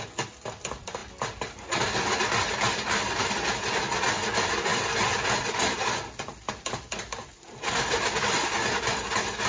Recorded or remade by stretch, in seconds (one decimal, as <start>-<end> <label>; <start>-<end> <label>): 0.0-9.5 recorded